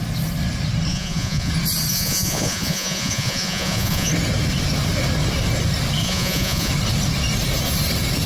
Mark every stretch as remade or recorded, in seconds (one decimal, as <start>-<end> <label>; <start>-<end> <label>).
0.0-0.9 recorded; 0.9-1.5 remade; 1.5-1.9 recorded; 1.9-4.1 remade; 4.1-6.0 recorded; 6.0-6.7 remade; 6.7-8.3 recorded